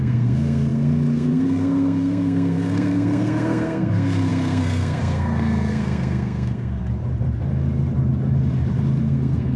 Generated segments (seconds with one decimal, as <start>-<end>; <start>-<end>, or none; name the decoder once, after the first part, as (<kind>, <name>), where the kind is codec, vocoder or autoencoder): 0.0-6.8 (codec, SNAC); 9.0-9.6